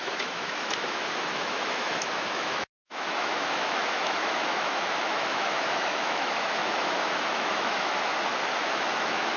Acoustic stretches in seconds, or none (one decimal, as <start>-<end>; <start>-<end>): 8.1-8.6